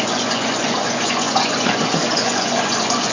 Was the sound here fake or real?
fake